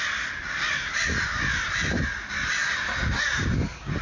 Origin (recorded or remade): recorded